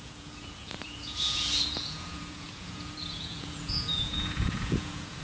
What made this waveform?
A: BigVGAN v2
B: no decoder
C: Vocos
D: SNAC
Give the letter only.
C